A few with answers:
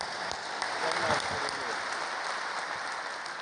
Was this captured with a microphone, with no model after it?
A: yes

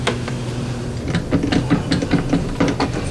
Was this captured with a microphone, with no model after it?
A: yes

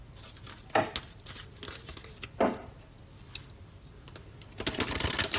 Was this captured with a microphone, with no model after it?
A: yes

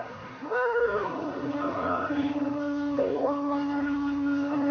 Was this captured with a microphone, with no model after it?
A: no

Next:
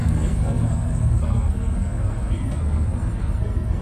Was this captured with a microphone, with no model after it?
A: no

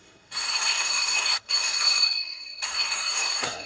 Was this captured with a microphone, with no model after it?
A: no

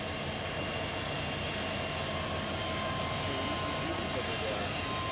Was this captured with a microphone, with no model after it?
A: yes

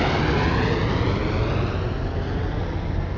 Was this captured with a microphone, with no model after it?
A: yes